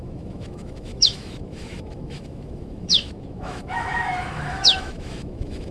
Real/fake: fake